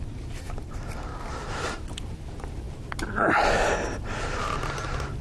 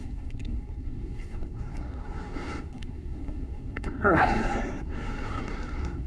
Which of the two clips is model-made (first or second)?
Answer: second